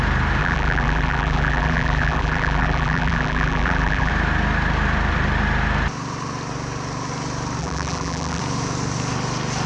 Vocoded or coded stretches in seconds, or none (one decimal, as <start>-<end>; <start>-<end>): 0.4-4.1; 7.6-8.4